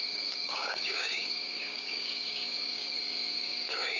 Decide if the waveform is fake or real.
fake